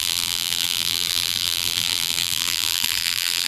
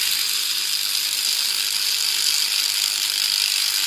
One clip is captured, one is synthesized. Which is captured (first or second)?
second